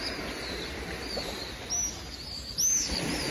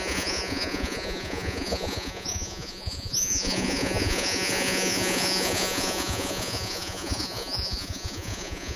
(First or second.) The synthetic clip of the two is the second